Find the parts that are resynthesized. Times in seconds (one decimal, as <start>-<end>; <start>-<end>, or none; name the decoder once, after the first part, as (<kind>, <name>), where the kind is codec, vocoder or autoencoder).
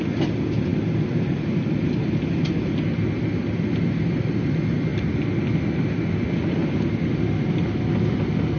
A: none